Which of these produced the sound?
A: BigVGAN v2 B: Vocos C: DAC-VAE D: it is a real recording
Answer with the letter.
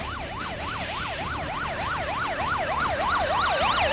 D